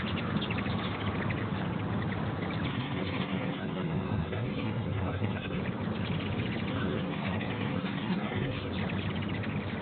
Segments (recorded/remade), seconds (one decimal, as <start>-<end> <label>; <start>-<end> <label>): 0.0-2.7 recorded; 2.7-5.6 remade; 5.6-6.7 recorded; 6.7-8.7 remade; 8.7-9.8 recorded